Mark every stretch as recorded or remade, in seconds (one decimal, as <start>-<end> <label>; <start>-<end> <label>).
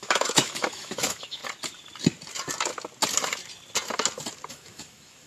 0.0-1.4 remade; 1.4-4.5 recorded; 4.5-5.3 remade